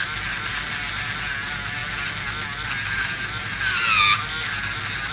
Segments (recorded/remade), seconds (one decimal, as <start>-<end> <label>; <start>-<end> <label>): 0.0-5.1 recorded